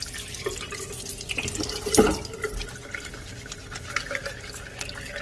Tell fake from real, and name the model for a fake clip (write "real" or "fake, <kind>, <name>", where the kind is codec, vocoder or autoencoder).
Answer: real